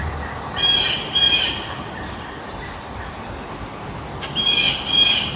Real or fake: real